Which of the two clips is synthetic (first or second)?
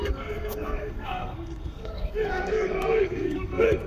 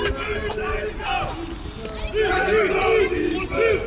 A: first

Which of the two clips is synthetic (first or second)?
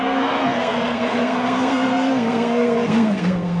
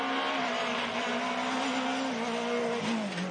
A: first